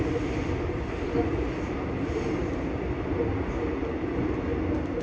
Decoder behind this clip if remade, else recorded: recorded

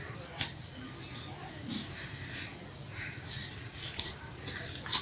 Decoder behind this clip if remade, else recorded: recorded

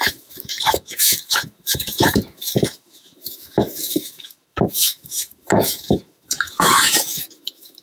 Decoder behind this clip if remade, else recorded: remade, autoencoder, DAC-VAE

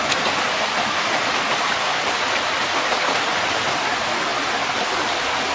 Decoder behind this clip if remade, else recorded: recorded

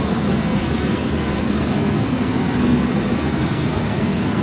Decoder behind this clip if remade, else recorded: remade, codec, SNAC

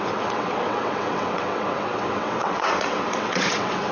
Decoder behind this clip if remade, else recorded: remade, vocoder, WaveNeXt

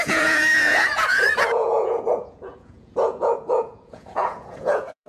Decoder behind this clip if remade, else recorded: remade, vocoder, Vocos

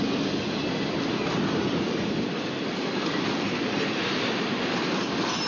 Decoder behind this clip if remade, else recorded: recorded